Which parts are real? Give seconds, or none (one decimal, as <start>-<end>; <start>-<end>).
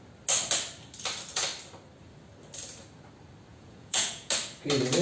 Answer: 0.0-3.5; 4.3-5.0